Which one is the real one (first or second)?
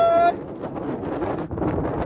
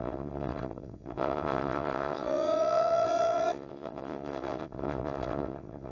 first